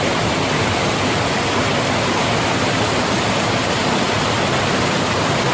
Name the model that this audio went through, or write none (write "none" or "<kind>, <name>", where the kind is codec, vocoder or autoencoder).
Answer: none